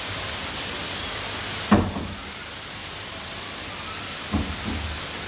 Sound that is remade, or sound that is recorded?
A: recorded